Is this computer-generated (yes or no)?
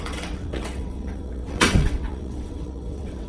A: yes